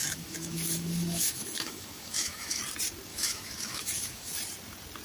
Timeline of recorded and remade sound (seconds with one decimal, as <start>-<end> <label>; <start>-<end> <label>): 0.0-2.6 remade; 2.6-3.1 recorded; 3.1-4.3 remade; 4.3-5.0 recorded